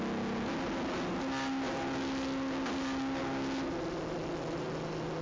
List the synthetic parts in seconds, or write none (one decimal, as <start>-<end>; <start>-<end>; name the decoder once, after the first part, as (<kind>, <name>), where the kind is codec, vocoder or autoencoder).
none